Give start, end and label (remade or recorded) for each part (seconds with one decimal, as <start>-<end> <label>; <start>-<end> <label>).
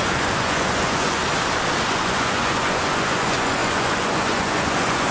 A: 0.0-1.2 remade; 1.2-1.9 recorded; 1.9-5.1 remade